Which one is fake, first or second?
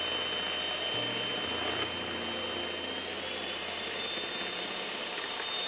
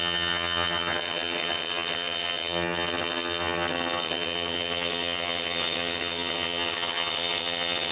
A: second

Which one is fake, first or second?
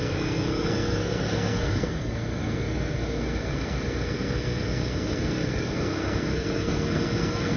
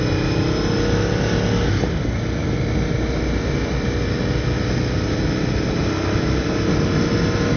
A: first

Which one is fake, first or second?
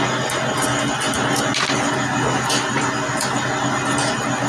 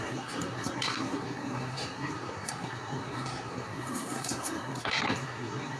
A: second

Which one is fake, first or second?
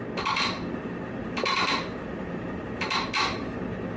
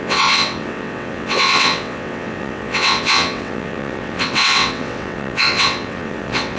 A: second